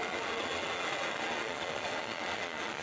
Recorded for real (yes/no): no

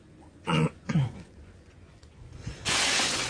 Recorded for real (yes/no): no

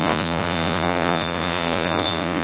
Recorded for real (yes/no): no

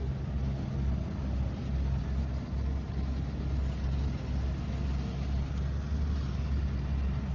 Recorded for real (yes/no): yes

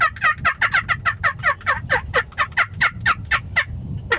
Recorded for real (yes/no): yes